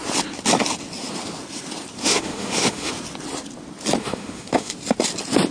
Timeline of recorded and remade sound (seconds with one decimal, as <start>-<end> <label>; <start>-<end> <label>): 0.0-2.0 recorded; 2.0-2.9 remade; 2.9-4.0 recorded; 4.0-4.7 remade; 4.7-5.5 recorded